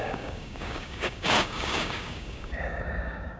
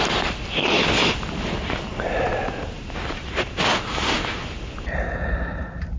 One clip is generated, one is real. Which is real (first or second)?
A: second